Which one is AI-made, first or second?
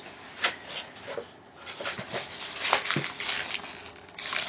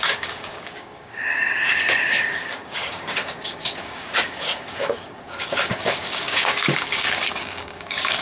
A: second